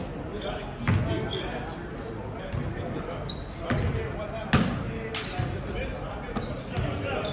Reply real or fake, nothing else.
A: real